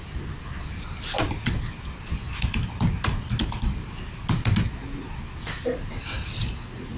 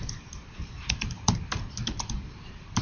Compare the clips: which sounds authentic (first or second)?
first